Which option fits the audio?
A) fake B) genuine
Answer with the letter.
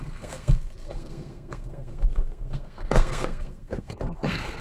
A